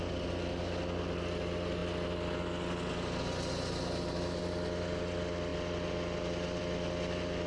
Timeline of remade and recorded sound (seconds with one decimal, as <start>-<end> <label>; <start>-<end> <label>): 0.0-7.5 recorded